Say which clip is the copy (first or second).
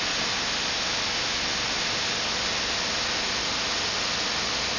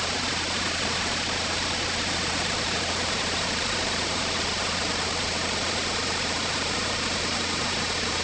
second